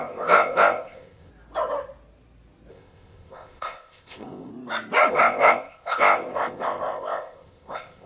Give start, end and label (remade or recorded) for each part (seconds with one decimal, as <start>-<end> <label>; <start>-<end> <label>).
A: 0.0-1.3 remade; 1.3-2.7 recorded; 2.7-4.5 remade; 4.5-5.1 recorded; 5.1-8.1 remade